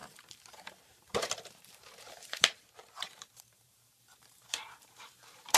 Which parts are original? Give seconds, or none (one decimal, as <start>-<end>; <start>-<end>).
none